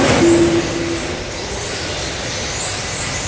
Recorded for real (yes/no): yes